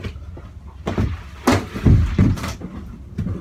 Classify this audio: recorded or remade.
recorded